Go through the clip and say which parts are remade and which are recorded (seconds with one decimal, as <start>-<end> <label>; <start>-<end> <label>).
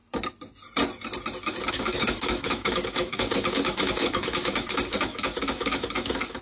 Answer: 0.0-1.7 recorded; 1.7-6.4 remade